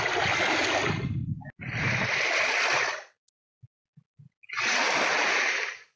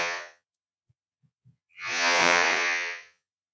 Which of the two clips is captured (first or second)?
first